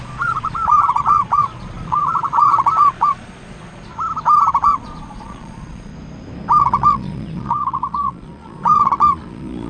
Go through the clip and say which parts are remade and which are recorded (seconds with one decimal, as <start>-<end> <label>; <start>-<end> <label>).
0.0-3.9 remade; 3.9-4.6 recorded; 4.6-5.9 remade; 5.9-6.6 recorded; 6.6-9.7 remade